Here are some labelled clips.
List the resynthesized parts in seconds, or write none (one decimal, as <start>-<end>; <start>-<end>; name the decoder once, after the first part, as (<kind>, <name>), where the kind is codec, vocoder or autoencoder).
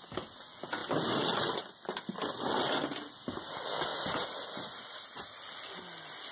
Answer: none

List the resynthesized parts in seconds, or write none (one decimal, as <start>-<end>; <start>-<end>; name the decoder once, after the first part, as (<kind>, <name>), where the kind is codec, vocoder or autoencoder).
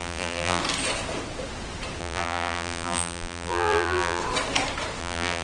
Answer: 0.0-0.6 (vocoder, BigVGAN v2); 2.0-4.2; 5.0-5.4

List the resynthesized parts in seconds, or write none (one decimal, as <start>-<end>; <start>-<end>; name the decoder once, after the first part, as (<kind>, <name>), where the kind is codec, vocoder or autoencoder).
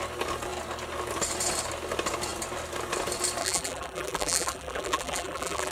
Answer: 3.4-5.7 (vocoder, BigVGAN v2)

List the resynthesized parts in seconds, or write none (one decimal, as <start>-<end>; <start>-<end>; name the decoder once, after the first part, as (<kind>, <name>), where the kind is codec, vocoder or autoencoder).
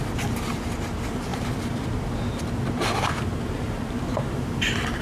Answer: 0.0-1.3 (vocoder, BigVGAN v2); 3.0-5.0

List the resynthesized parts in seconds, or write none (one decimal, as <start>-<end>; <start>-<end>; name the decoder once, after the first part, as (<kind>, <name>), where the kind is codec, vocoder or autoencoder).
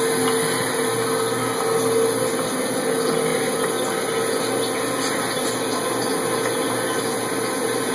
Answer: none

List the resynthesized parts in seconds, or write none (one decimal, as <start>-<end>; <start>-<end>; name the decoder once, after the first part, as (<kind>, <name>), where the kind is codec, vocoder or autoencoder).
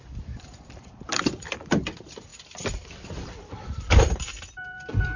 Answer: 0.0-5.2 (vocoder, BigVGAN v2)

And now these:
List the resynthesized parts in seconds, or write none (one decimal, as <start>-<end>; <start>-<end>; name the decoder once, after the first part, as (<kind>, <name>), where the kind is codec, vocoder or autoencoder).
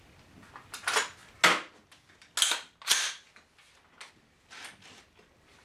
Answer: none